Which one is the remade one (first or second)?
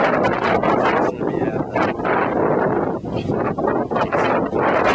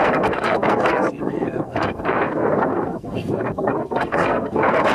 second